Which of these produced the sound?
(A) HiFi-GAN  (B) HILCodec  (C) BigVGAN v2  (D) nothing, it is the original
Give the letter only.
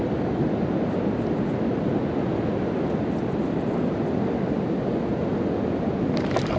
D